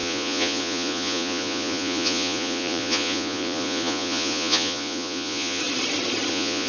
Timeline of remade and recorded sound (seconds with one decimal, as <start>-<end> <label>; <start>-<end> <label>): 0.0-5.6 remade; 5.6-6.3 recorded; 6.3-6.7 remade